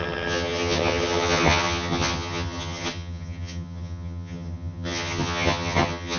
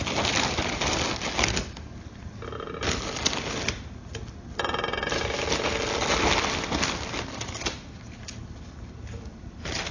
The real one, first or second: second